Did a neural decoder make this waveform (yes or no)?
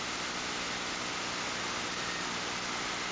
no